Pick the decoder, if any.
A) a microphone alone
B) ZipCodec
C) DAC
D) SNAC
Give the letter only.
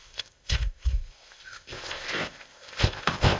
B